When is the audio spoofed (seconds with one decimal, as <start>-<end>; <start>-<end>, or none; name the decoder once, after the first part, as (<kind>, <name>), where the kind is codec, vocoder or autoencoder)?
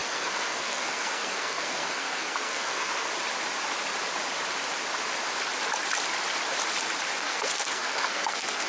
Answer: 0.0-3.1 (codec, SNAC); 7.2-8.7